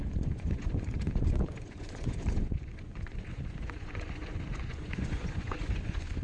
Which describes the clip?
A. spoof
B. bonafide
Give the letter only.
A